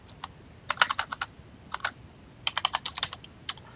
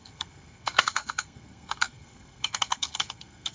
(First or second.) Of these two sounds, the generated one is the second